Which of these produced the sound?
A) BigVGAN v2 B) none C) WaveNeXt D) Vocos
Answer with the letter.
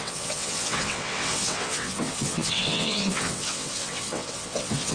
C